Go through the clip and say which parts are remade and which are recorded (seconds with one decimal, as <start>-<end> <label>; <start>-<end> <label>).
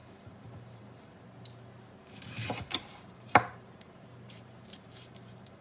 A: 0.0-1.1 remade; 1.1-2.0 recorded; 2.0-5.6 remade